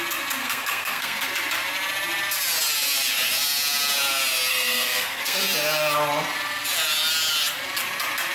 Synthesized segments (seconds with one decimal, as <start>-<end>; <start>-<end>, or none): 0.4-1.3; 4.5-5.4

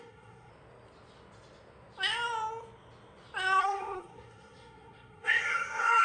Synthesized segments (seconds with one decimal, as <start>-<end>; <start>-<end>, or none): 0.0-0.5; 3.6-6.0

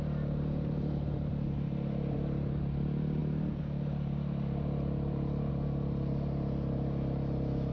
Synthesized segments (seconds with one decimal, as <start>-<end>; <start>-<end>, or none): none

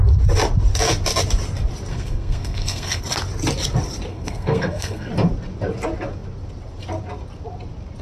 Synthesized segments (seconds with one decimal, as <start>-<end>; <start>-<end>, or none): 1.9-3.0; 4.1-5.1

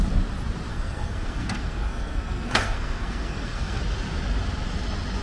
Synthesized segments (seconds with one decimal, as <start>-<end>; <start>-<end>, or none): 0.7-3.8

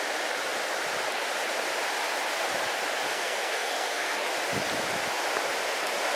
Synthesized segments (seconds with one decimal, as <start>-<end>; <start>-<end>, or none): 3.1-4.2

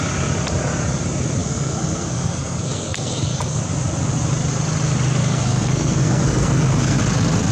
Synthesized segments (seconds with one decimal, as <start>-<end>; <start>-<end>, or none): 1.4-3.6; 5.2-7.0